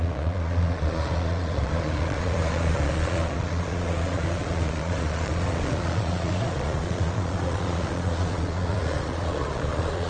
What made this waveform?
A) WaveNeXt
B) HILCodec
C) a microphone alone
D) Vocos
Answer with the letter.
D